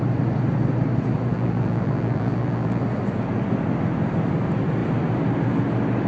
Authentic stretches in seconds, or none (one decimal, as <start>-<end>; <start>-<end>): 0.0-1.3; 2.8-6.1